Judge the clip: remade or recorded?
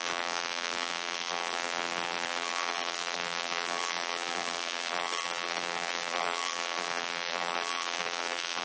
remade